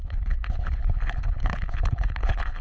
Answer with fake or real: fake